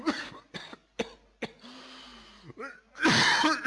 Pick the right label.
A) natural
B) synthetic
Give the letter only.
A